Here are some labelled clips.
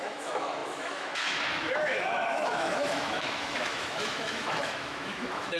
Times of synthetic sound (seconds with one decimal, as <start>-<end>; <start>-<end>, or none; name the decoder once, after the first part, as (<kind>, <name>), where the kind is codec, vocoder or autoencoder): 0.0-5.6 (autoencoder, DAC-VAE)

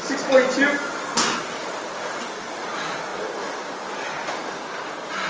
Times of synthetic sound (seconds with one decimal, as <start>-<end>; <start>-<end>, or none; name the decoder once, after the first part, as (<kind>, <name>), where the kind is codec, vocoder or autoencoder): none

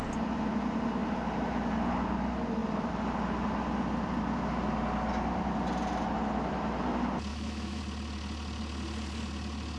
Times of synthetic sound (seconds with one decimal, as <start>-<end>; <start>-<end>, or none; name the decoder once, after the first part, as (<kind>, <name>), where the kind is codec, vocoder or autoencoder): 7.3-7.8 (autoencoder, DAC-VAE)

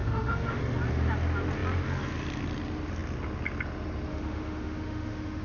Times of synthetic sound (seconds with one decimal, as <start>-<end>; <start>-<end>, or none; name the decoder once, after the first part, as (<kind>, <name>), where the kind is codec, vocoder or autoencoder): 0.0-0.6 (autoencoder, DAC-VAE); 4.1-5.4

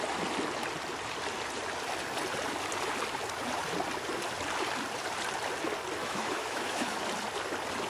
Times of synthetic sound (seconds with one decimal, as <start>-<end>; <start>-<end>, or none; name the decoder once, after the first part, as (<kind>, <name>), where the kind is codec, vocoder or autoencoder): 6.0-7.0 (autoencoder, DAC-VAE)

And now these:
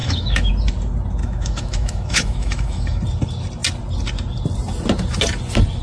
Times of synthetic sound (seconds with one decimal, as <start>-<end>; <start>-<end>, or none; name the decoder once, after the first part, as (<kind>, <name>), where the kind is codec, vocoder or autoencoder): 0.0-0.5 (autoencoder, DAC-VAE); 1.2-3.0

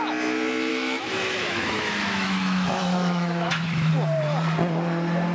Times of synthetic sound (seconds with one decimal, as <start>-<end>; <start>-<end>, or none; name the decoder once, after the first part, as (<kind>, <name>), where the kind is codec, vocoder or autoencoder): 0.7-3.9 (autoencoder, DAC-VAE)